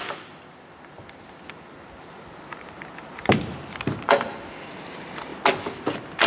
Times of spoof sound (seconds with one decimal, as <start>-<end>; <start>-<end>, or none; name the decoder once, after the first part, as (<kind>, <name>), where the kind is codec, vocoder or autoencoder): none